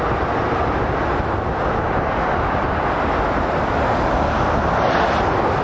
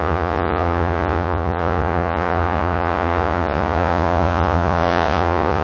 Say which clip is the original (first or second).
first